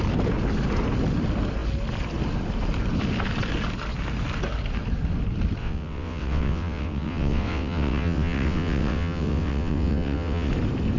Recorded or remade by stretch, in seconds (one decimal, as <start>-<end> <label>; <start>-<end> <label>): 0.0-5.6 recorded; 5.6-10.5 remade; 10.5-11.0 recorded